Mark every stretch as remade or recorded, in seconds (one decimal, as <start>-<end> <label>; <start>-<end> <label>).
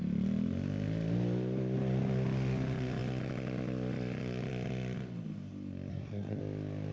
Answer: 0.0-5.9 recorded; 5.9-6.4 remade; 6.4-6.9 recorded